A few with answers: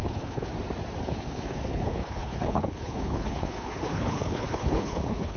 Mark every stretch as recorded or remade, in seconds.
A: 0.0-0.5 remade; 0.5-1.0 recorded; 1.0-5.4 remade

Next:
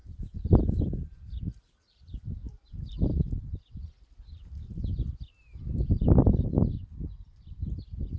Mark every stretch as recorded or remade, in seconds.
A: 0.0-3.1 remade; 3.1-8.2 recorded

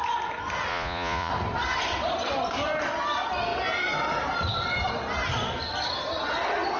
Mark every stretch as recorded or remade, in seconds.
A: 0.0-0.7 recorded; 0.7-1.3 remade; 1.3-6.8 recorded

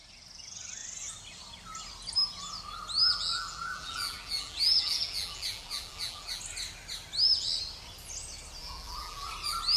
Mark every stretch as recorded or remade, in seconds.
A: 0.0-3.0 recorded; 3.0-6.4 remade; 6.4-8.6 recorded; 8.6-9.3 remade; 9.3-9.8 recorded

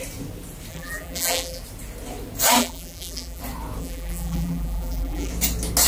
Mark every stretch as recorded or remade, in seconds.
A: 0.0-0.7 recorded; 0.7-1.6 remade; 1.6-2.6 recorded; 2.6-3.4 remade; 3.4-3.8 recorded; 3.8-5.3 remade; 5.3-5.9 recorded

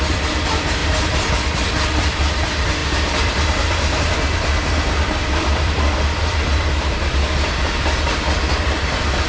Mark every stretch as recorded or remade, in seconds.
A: 0.0-9.3 remade

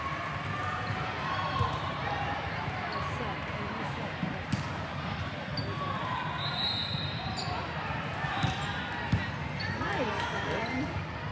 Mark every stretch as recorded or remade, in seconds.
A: 0.0-5.5 remade; 5.5-6.6 recorded; 6.6-7.4 remade; 7.4-11.3 recorded